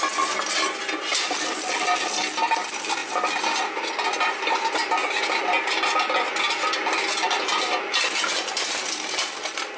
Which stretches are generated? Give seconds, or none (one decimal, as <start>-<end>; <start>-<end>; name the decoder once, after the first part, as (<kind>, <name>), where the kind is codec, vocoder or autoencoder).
none